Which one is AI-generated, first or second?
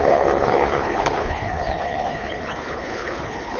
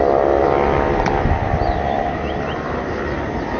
first